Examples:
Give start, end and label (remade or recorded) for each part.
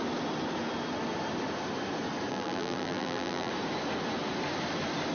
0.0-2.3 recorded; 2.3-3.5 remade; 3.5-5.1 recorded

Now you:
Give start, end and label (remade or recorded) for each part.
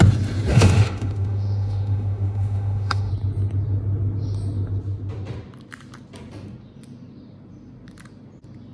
0.0-0.5 recorded; 0.5-3.1 remade; 3.1-8.7 recorded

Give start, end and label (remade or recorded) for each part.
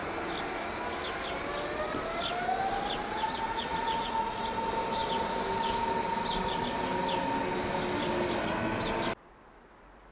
0.0-3.0 recorded; 3.0-4.4 remade; 4.4-10.1 recorded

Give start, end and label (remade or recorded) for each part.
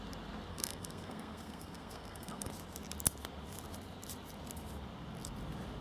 0.0-0.5 recorded; 0.5-2.5 remade; 2.5-5.8 recorded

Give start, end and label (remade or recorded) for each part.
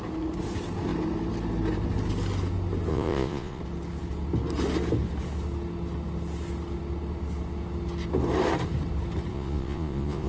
0.0-2.9 recorded; 2.9-3.6 remade; 3.6-9.3 recorded; 9.3-10.3 remade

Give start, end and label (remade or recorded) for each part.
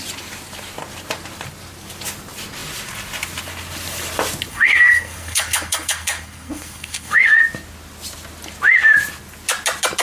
0.0-4.5 recorded; 4.5-7.4 remade; 7.4-10.0 recorded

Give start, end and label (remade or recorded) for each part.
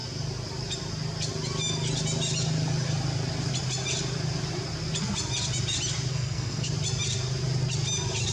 0.0-6.1 recorded; 6.1-6.7 remade; 6.7-8.3 recorded